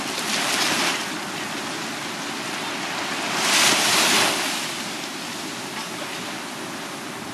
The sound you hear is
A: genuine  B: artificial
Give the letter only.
A